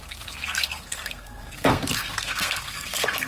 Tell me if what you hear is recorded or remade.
remade